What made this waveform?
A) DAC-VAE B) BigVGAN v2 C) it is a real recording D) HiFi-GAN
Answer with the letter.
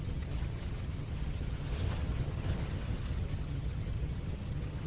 D